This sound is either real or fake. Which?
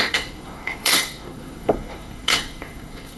fake